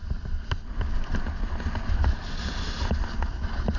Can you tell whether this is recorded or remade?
recorded